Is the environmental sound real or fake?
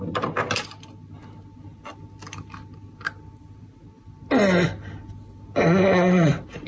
real